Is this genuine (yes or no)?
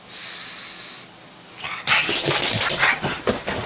yes